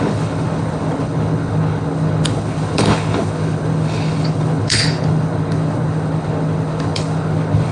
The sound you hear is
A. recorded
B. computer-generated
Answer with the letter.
B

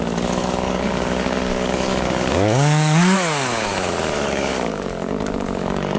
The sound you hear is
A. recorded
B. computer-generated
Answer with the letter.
B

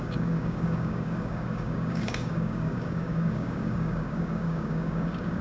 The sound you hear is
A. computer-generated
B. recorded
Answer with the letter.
A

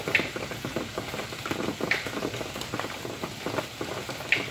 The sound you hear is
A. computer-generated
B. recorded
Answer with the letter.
B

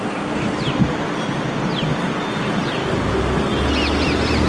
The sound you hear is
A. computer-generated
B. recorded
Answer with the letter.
B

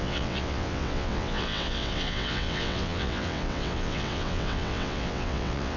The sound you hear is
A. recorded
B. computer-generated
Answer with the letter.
B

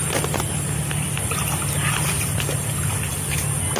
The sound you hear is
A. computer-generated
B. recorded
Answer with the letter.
B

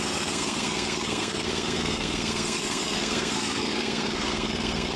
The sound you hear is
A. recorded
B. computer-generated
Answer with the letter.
B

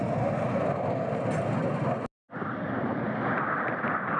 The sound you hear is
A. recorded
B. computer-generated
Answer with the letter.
A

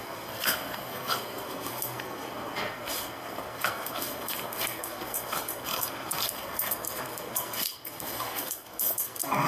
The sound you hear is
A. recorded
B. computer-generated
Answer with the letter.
B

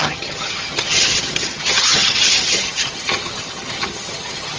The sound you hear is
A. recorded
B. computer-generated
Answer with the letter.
B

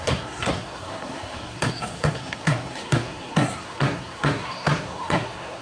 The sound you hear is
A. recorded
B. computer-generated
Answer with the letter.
B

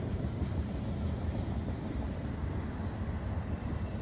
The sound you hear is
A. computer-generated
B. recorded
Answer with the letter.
A